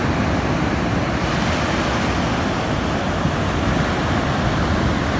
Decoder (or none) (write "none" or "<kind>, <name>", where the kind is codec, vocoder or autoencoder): none